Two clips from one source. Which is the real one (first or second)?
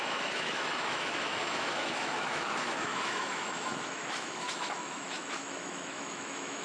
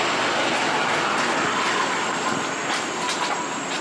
second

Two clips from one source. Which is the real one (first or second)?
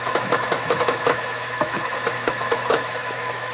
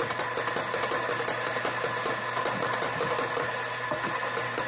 second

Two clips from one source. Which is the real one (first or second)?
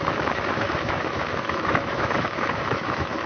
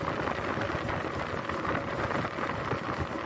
second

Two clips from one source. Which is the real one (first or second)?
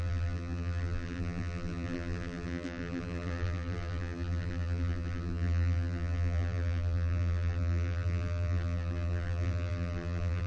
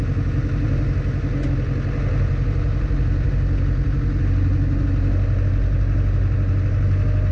second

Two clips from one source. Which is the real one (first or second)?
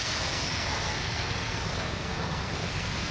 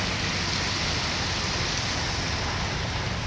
second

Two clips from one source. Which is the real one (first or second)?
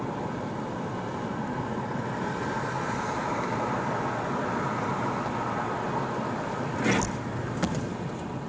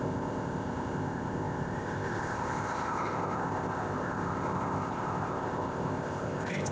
first